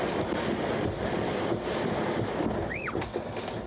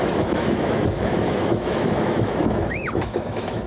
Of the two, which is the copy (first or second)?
second